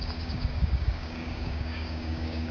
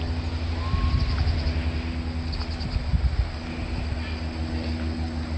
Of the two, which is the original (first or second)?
second